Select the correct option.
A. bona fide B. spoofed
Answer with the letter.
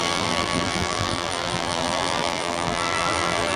B